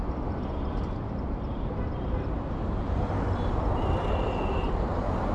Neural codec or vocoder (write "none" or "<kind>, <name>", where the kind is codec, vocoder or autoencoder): vocoder, BigVGAN v2